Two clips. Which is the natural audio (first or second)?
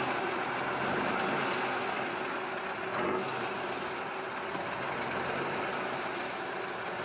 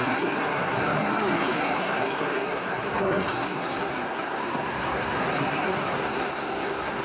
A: first